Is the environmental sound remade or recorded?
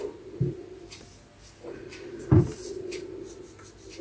recorded